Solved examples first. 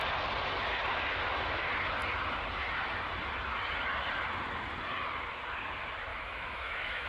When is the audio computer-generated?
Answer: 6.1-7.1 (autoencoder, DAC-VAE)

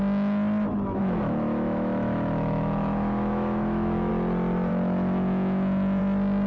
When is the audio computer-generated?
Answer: 1.0-4.1 (autoencoder, DAC-VAE); 4.7-6.0

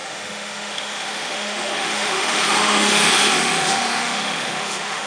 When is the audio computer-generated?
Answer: 0.0-5.1 (autoencoder, DAC-VAE)